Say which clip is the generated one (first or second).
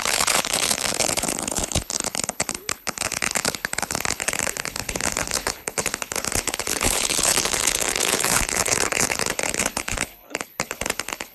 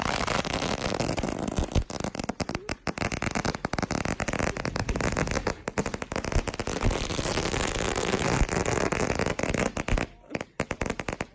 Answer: first